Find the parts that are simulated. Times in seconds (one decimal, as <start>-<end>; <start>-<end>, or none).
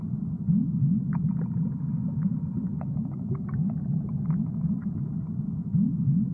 none